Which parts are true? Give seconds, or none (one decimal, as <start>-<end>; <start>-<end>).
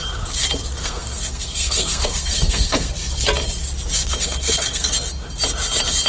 0.0-0.8; 2.9-4.0; 4.9-6.1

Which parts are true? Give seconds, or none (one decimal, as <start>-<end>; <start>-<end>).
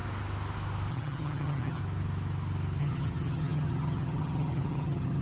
0.0-0.9; 1.8-2.8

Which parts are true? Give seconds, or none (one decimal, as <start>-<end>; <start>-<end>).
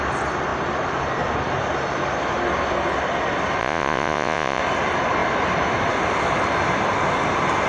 0.0-3.6; 4.6-7.7